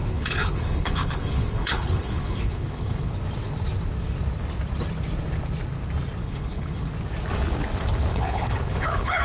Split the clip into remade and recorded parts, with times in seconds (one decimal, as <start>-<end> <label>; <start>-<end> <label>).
0.0-3.1 remade; 3.1-6.2 recorded; 6.2-6.9 remade; 6.9-8.1 recorded; 8.1-9.2 remade

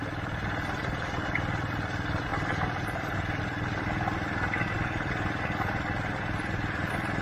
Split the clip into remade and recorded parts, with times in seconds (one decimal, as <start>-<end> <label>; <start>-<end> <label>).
0.0-2.3 recorded; 2.3-3.4 remade; 3.4-7.2 recorded

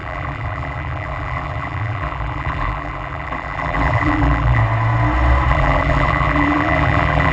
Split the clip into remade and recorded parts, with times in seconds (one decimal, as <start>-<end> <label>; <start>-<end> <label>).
0.0-4.6 remade; 4.6-5.5 recorded; 5.5-7.3 remade

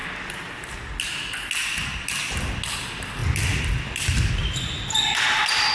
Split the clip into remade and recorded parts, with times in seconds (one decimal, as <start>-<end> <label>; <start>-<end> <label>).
0.0-5.7 recorded

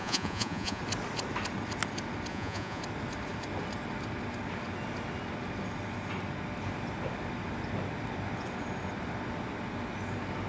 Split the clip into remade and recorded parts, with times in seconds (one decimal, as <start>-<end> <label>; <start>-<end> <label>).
0.0-0.8 remade; 0.8-2.3 recorded; 2.3-2.8 remade; 2.8-10.5 recorded

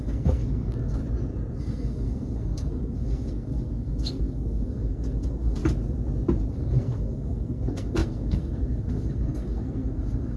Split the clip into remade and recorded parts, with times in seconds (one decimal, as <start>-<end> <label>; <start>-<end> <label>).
0.0-1.0 remade; 1.0-1.6 recorded; 1.6-5.6 remade; 5.6-6.5 recorded; 6.5-10.4 remade